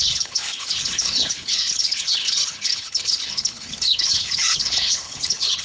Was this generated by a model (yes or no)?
yes